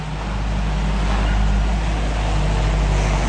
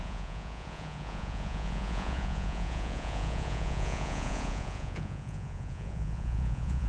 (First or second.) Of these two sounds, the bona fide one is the first